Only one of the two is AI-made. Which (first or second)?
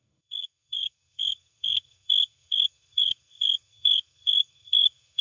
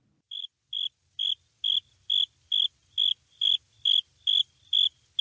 first